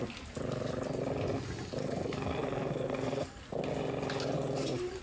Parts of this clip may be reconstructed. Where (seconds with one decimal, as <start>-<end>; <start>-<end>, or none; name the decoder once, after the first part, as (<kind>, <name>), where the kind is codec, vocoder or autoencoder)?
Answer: 1.8-3.4 (codec, SNAC)